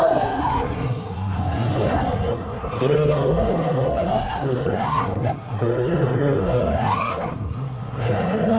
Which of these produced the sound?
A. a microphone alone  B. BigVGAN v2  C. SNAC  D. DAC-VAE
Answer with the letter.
C